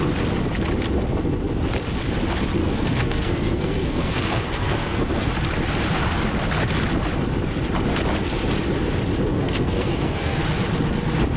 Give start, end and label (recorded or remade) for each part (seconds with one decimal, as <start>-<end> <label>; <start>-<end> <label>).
0.0-2.6 recorded; 2.6-5.3 remade; 5.3-9.3 recorded; 9.3-10.4 remade; 10.4-11.4 recorded